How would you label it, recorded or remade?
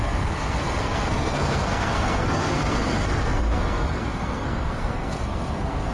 remade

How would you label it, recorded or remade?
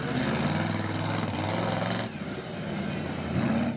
recorded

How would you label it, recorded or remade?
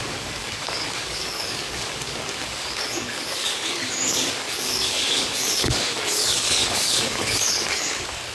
remade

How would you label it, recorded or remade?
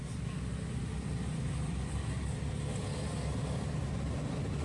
recorded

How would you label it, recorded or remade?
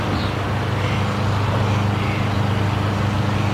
recorded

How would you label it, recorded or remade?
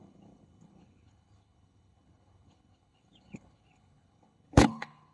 remade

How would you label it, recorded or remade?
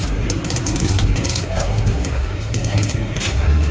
remade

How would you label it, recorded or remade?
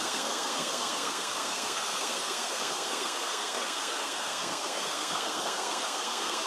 remade